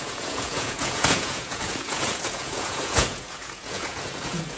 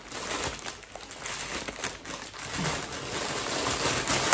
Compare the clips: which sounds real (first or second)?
second